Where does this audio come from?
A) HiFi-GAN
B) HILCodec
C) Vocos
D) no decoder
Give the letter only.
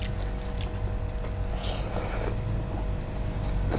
D